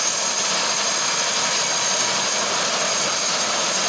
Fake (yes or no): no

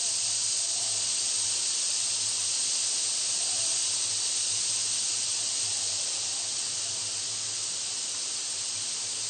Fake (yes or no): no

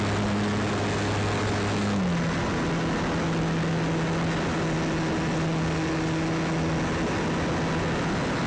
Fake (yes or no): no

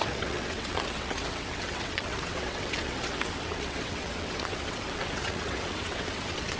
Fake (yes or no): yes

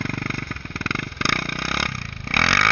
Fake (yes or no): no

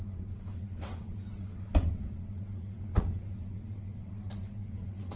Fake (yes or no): yes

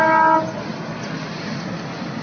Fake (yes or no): no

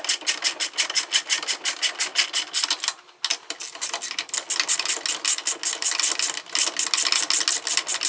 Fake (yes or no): no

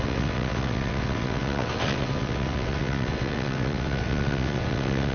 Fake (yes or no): yes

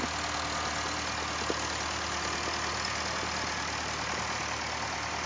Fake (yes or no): no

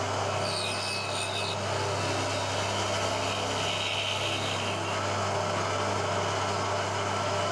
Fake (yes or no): no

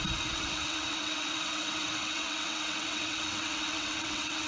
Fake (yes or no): yes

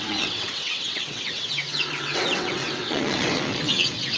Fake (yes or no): yes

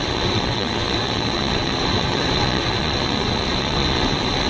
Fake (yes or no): yes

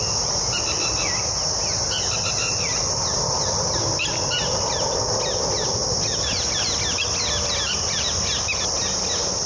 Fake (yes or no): no